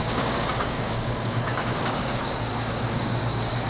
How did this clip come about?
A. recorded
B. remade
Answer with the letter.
B